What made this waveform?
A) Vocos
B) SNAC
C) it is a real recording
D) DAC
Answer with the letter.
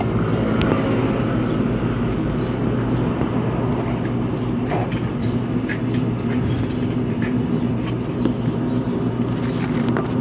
C